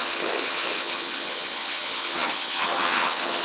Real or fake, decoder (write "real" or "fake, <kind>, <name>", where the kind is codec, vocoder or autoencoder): fake, vocoder, HiFi-GAN